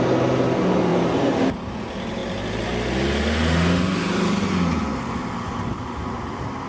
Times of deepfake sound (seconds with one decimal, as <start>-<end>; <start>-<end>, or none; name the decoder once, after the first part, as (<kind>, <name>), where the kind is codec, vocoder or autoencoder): none